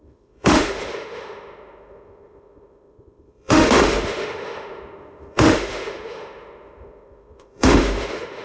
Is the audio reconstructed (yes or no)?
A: yes